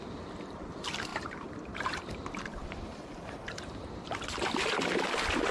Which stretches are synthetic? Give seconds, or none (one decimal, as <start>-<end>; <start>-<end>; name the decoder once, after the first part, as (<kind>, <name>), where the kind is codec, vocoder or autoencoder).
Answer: 1.1-4.3 (vocoder, BigVGAN v2)